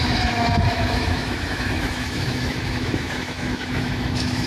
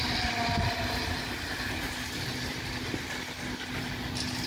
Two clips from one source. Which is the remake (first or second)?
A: first